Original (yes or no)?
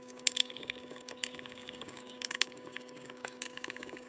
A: no